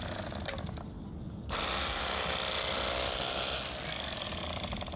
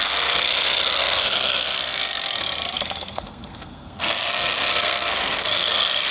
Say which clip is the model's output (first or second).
second